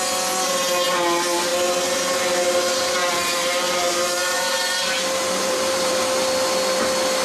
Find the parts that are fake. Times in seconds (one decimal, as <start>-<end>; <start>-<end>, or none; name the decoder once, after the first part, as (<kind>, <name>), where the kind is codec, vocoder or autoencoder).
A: 3.0-5.9 (vocoder, BigVGAN v2)